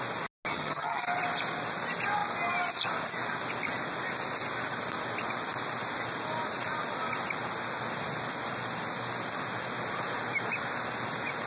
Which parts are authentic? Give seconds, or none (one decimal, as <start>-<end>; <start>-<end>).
0.0-0.5; 1.0-11.5